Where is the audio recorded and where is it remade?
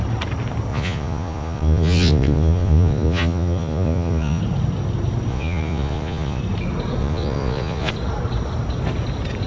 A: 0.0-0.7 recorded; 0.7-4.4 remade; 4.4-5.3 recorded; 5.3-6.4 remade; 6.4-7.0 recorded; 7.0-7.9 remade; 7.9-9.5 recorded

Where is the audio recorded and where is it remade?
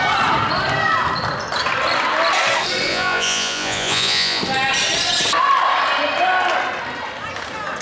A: 0.0-2.9 recorded; 2.9-4.4 remade; 4.4-7.8 recorded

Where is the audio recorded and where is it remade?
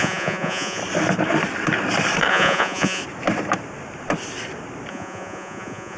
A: 0.0-0.8 remade; 0.8-2.3 recorded; 2.3-3.0 remade; 3.0-4.9 recorded; 4.9-6.0 remade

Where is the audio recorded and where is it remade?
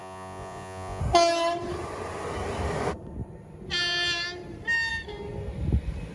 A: 0.0-1.0 remade; 1.0-6.1 recorded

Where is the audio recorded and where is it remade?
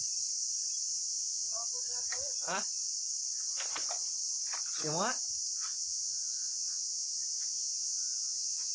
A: 0.0-0.9 recorded; 0.9-1.5 remade; 1.5-5.7 recorded; 5.7-8.7 remade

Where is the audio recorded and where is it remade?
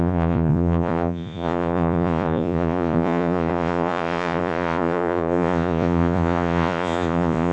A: 0.0-7.5 remade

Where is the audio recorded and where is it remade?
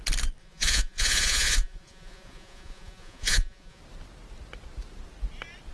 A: 0.0-0.4 recorded; 0.4-3.8 remade; 3.8-5.7 recorded